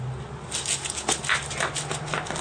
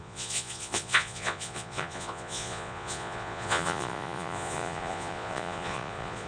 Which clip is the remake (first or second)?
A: second